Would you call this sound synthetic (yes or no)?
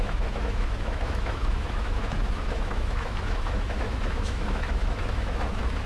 yes